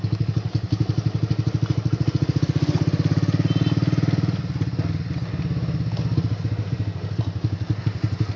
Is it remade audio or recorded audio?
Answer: recorded